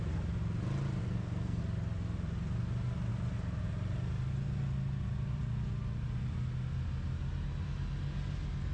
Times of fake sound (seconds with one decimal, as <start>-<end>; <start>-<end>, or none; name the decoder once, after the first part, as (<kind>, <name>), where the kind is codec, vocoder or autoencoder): 1.0-1.6 (codec, SNAC)